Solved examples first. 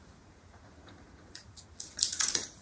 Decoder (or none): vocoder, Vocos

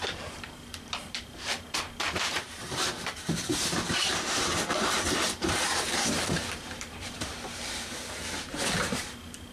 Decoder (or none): vocoder, BigVGAN v2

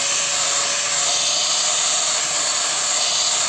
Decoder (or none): none